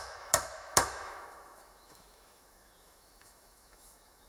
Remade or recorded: remade